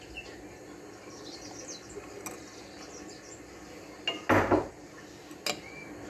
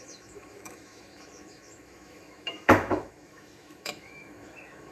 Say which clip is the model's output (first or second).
second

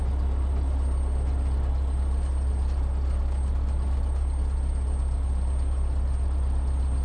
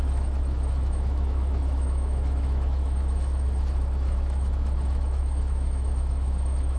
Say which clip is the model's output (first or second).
second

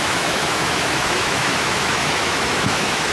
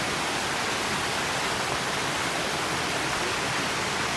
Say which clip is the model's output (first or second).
first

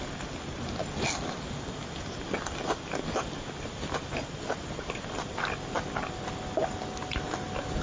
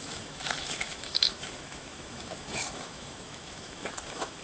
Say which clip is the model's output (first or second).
second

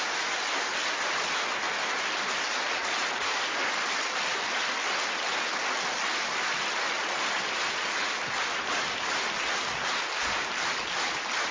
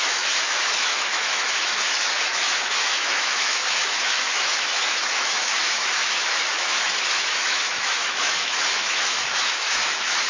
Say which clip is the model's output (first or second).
second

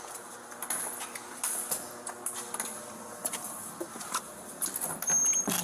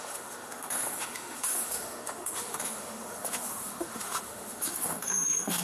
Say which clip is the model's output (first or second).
second